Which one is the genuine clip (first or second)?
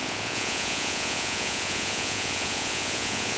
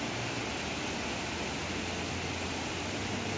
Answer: second